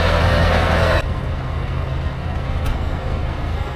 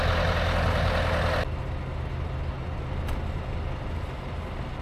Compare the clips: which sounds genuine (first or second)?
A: second